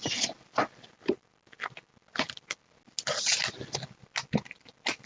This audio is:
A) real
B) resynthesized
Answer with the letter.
A